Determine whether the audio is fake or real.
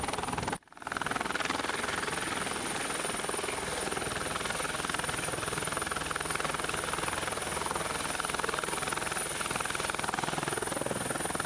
real